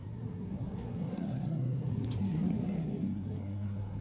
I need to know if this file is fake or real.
fake